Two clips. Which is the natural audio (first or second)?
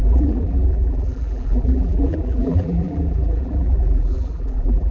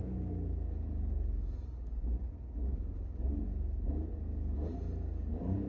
second